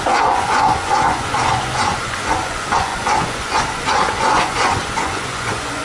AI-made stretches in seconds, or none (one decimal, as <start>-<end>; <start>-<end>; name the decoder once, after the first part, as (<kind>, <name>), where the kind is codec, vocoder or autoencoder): 0.0-5.8 (vocoder, Vocos)